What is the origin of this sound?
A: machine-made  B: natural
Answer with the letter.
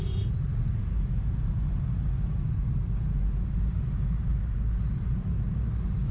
A